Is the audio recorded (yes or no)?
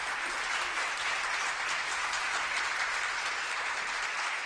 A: yes